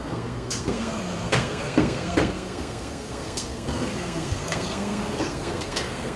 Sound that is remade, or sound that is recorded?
remade